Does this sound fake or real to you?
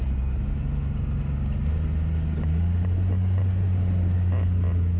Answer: real